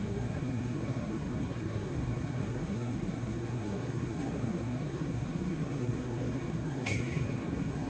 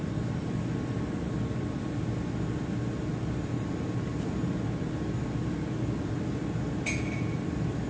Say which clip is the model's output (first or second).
first